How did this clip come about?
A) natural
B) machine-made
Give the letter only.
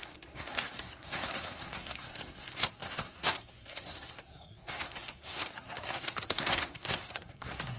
B